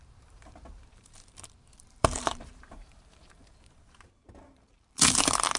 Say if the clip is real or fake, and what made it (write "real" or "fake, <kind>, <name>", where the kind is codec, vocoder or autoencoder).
fake, vocoder, BigVGAN v2